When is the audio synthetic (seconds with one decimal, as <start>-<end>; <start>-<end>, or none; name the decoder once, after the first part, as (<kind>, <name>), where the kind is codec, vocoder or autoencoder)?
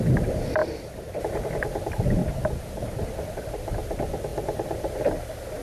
0.6-1.2 (vocoder, BigVGAN v2); 2.2-3.7; 4.3-5.0